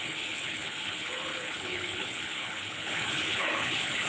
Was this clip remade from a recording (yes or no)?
yes